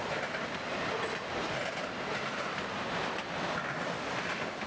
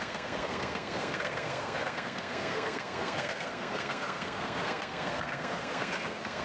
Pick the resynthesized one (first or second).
second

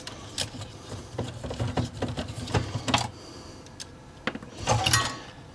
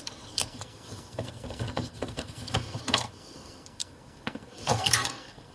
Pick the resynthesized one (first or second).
second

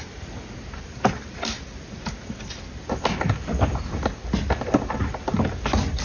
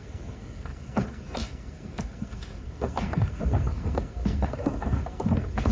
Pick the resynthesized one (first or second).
second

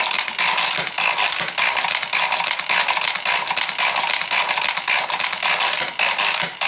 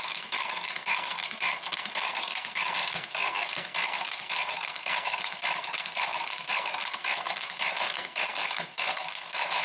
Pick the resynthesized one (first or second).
second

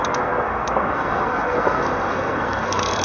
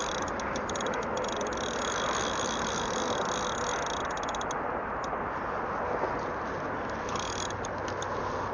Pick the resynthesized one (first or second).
first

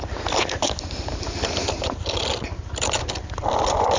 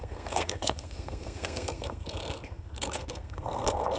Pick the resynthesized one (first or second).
second